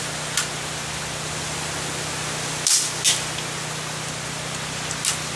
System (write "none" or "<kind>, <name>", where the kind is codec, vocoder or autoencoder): none